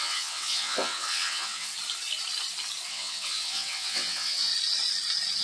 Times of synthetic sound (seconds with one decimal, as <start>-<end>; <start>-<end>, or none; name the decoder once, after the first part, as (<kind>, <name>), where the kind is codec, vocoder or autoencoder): 0.0-1.7 (vocoder, WaveNeXt); 2.9-4.5